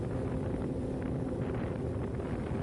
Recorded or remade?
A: remade